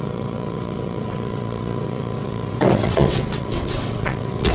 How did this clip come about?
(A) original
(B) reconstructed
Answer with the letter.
B